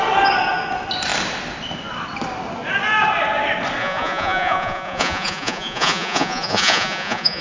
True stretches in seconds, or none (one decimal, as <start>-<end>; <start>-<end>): 0.0-3.8